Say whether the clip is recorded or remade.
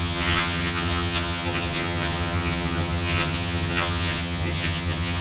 remade